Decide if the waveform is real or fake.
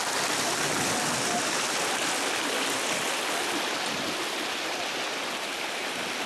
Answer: real